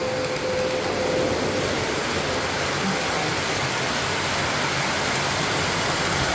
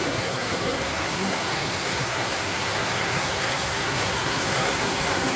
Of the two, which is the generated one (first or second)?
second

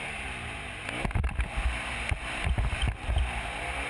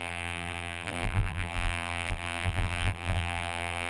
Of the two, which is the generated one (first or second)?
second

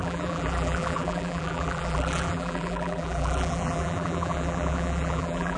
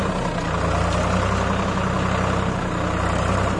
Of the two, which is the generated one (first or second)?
first